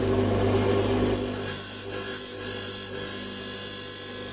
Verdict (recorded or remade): recorded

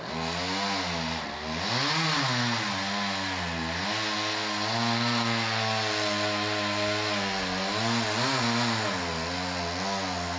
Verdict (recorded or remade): recorded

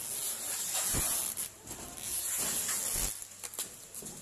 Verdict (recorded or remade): recorded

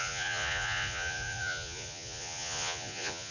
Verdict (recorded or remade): remade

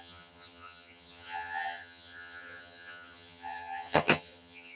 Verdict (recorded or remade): remade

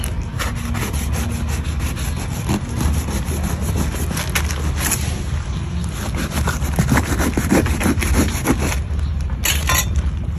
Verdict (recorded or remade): recorded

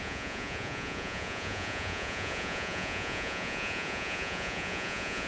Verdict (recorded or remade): remade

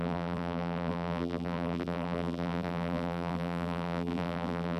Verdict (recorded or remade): remade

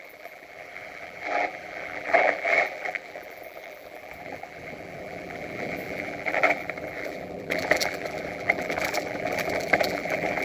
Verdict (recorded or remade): remade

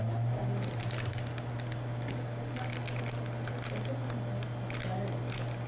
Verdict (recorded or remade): recorded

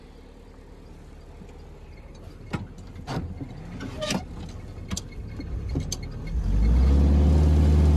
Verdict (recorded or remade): recorded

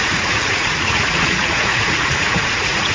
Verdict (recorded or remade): remade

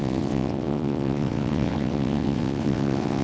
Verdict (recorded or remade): remade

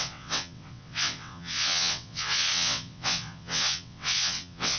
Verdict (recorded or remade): remade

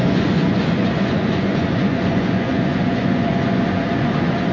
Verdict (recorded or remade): remade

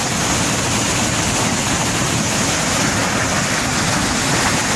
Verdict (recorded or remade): recorded